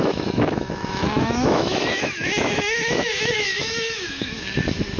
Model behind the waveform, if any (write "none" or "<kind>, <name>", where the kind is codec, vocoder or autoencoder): autoencoder, DAC-VAE